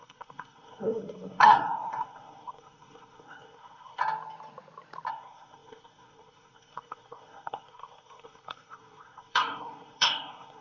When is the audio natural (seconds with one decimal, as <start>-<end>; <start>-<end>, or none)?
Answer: 4.0-5.1